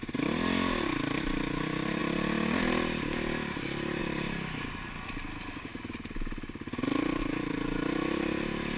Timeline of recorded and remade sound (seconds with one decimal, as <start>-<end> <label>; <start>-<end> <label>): 0.0-8.8 recorded